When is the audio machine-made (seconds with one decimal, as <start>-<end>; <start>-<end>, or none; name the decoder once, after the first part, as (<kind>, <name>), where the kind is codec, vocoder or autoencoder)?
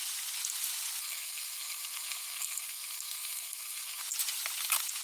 1.0-4.0 (codec, SNAC)